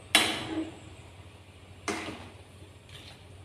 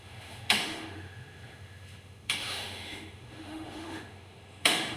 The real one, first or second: first